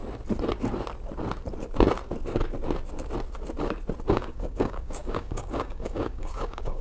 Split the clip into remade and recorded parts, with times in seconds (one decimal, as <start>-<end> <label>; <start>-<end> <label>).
0.0-4.1 recorded; 4.1-6.8 remade